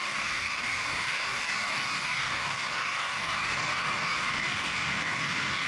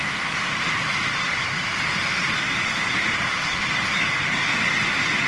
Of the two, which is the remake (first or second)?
first